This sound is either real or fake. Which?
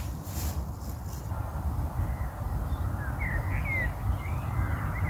real